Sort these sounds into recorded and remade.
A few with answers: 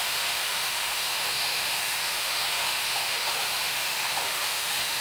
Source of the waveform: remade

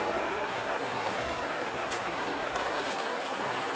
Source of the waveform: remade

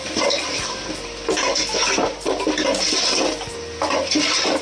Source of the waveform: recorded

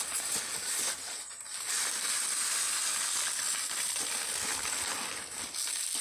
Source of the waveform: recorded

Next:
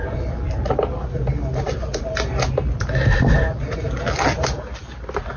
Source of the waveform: recorded